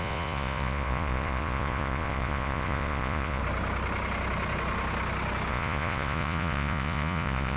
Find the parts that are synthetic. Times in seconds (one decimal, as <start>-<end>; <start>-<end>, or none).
0.0-3.4; 5.5-7.6